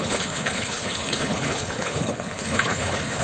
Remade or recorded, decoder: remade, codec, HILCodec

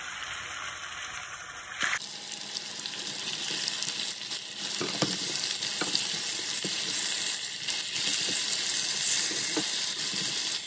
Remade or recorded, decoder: recorded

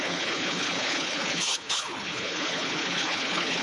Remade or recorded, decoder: remade, codec, HILCodec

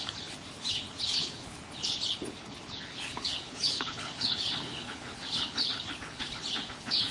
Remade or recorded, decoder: remade, codec, HILCodec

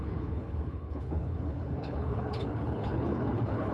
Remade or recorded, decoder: remade, codec, HILCodec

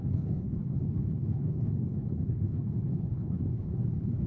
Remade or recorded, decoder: remade, codec, HILCodec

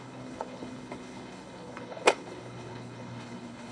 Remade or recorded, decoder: remade, codec, HILCodec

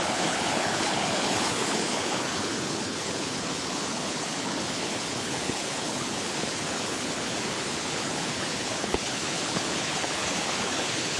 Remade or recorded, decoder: remade, codec, HILCodec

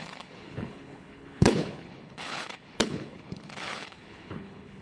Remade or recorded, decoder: remade, codec, HILCodec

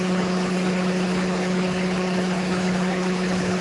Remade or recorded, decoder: remade, codec, HILCodec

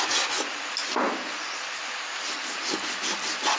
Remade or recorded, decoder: recorded